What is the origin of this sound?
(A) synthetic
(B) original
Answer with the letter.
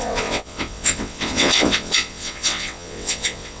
A